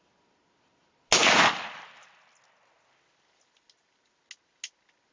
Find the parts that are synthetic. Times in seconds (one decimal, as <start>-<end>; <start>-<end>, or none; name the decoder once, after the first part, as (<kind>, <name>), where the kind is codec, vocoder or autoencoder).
none